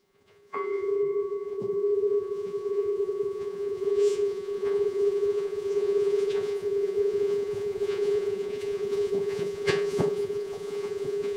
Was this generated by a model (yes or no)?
yes